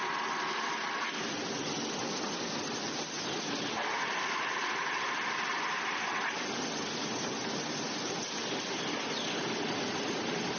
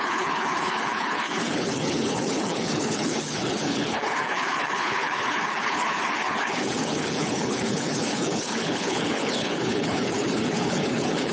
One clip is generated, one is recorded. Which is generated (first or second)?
second